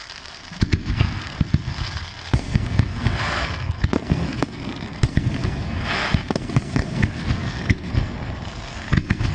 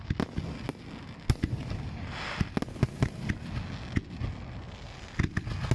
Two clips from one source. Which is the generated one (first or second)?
first